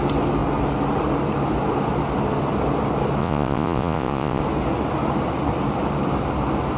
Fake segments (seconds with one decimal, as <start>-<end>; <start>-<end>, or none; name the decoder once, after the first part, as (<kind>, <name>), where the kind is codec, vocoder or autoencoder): 3.2-4.4 (vocoder, Vocos)